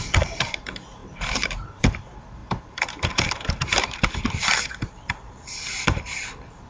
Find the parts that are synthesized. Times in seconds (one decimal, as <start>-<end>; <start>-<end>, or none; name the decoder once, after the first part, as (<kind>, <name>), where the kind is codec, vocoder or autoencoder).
0.0-6.7 (vocoder, BigVGAN v2)